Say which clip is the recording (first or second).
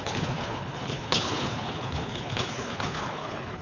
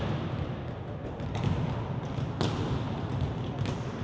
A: second